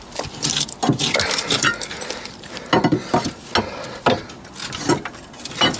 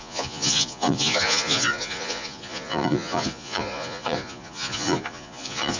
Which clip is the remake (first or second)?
second